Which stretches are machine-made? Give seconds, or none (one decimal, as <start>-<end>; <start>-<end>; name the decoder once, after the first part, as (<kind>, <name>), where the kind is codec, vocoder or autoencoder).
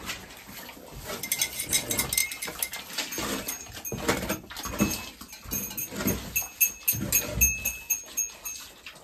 none